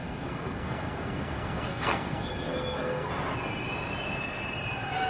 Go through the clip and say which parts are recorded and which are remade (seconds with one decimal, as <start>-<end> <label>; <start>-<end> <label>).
0.0-3.1 remade; 3.1-5.1 recorded